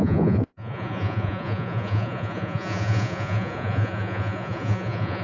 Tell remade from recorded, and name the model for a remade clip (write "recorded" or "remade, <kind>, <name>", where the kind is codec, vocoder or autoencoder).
remade, vocoder, Vocos